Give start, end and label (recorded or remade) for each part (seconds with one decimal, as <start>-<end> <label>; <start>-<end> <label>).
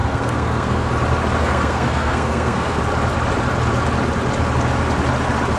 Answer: 0.0-0.9 remade; 0.9-1.4 recorded; 1.4-2.8 remade; 2.8-5.6 recorded